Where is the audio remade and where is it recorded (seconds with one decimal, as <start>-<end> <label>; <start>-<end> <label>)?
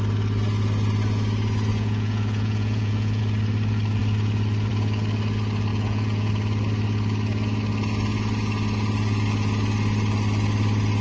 0.0-1.7 recorded; 1.7-3.2 remade; 3.2-5.7 recorded; 5.7-6.3 remade; 6.3-11.0 recorded